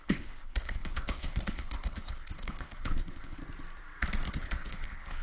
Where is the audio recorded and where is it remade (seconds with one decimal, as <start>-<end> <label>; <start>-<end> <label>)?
0.0-3.4 remade; 3.4-4.3 recorded; 4.3-5.2 remade